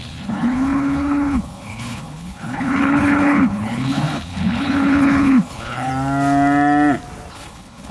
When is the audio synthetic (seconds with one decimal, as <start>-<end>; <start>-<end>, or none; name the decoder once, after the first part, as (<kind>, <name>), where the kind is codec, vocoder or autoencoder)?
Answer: 0.0-5.9 (codec, HILCodec); 7.3-7.9